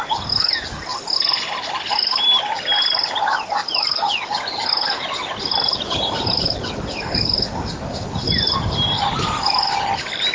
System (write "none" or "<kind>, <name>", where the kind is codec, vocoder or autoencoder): none